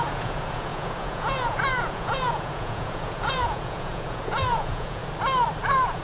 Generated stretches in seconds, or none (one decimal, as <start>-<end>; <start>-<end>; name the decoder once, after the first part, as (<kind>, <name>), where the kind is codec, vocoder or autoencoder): 0.0-5.0 (vocoder, Vocos); 5.6-6.0